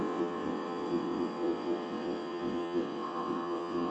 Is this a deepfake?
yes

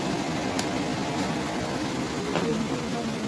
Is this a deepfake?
no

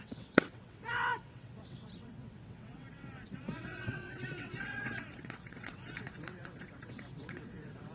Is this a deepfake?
yes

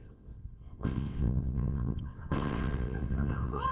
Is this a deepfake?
yes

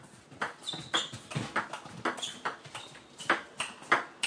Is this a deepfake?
no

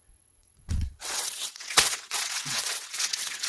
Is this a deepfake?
yes